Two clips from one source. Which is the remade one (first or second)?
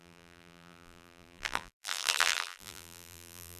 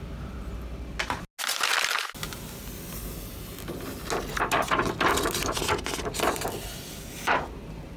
first